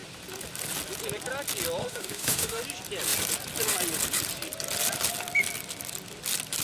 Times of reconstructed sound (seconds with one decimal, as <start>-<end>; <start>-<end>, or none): 1.8-2.6